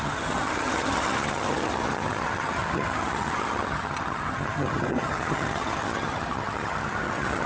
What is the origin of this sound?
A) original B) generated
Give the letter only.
B